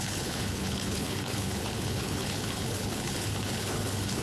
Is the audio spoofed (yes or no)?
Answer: yes